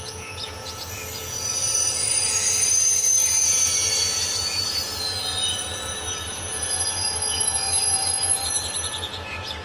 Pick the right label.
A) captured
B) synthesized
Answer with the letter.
B